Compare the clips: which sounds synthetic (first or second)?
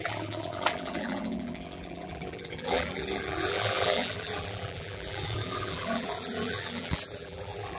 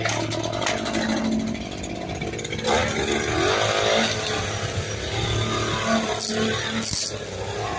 first